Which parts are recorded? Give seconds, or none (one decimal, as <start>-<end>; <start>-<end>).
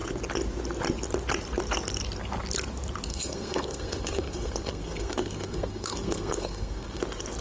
0.0-3.1; 7.0-7.4